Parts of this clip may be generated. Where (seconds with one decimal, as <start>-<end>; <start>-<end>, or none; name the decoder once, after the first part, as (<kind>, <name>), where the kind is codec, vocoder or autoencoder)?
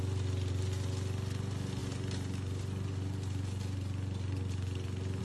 none